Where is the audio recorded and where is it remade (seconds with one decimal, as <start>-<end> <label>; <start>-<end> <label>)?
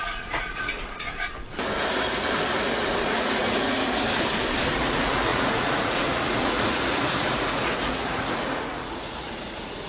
0.0-1.4 remade; 1.4-3.1 recorded; 3.1-3.8 remade; 3.8-4.7 recorded; 4.7-9.9 remade